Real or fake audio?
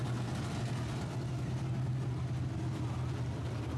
real